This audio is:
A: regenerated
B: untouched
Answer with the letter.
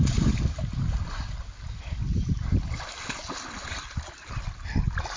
B